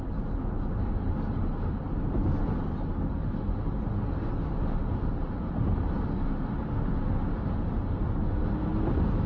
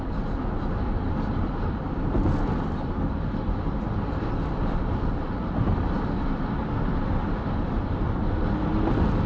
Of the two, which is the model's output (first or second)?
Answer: second